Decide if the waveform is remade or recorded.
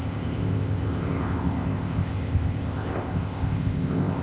remade